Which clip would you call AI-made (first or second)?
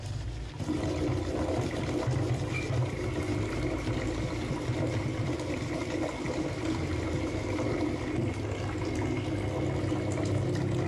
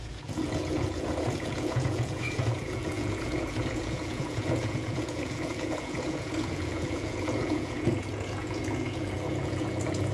second